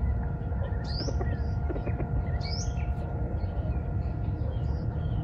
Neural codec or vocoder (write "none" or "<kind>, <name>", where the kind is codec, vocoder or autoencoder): none